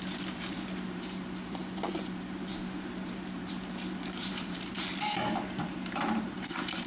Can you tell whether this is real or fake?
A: fake